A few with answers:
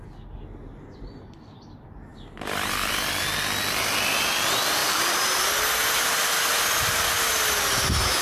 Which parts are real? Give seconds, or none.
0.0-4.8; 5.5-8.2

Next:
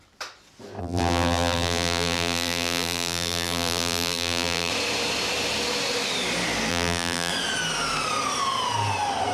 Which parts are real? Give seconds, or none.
0.0-0.8; 4.7-6.7; 7.3-9.3

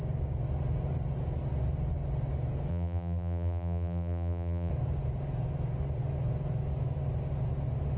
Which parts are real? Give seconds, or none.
0.0-2.7; 4.7-8.0

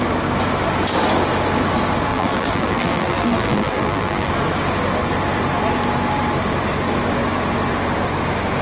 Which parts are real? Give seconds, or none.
0.0-2.1; 4.3-8.6

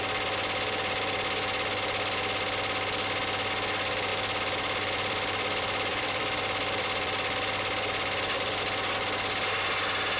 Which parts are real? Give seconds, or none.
0.0-4.1; 8.6-10.2

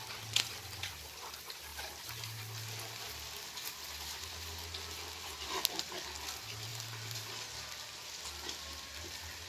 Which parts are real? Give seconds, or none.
0.0-1.7; 2.4-6.7; 7.3-9.5

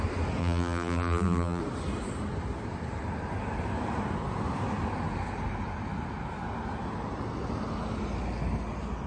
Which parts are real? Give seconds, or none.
0.0-0.4; 1.6-9.1